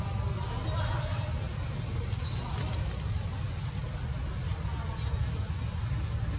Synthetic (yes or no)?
no